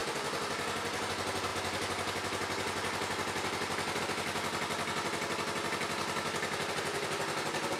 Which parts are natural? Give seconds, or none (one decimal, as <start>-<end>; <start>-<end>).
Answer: 1.1-7.8